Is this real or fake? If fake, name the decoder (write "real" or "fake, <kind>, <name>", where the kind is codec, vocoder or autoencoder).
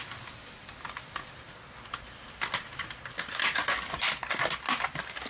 real